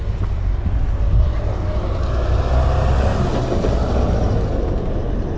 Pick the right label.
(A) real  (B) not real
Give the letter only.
A